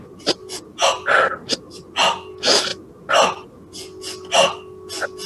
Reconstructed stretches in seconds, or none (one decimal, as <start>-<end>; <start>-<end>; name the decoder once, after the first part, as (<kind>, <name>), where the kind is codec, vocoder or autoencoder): none